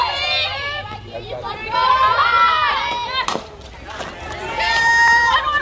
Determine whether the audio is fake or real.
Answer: real